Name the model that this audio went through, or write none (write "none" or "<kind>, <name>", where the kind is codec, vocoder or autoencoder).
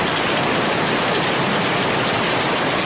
none